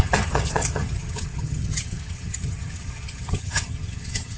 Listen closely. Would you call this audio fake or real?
fake